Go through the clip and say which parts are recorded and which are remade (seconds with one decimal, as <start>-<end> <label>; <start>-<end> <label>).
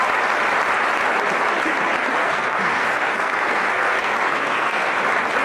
0.0-2.2 recorded; 2.2-4.9 remade; 4.9-5.4 recorded